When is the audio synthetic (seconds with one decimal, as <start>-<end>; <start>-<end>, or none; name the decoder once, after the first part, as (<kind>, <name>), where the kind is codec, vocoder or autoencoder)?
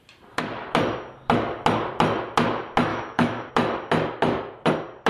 2.9-3.5 (autoencoder, DAC-VAE)